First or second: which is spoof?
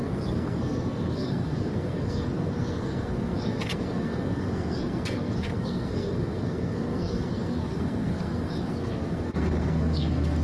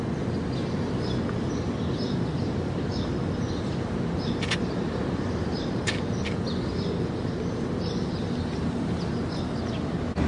first